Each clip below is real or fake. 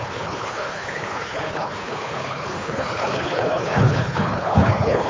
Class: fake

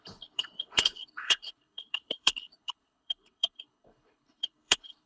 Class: fake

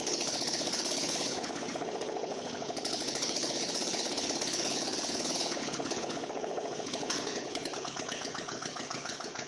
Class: fake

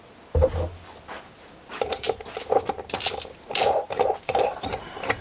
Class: real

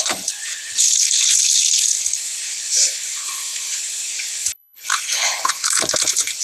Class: fake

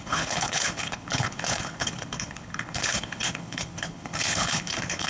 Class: fake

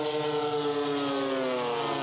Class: real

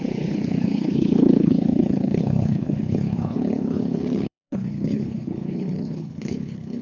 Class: fake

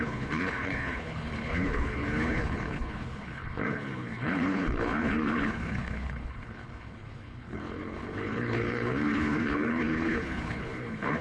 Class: fake